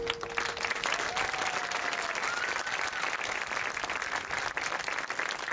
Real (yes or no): yes